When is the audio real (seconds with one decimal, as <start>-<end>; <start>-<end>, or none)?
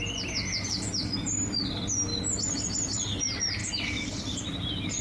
0.0-5.0